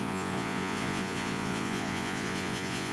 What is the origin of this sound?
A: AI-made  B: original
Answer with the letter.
A